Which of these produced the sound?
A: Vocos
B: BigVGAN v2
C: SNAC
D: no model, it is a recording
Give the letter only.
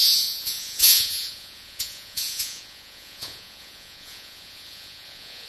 A